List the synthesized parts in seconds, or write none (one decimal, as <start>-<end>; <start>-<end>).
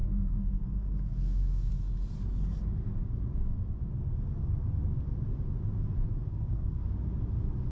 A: 0.0-1.7; 6.3-6.8